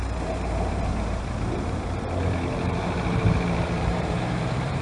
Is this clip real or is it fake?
fake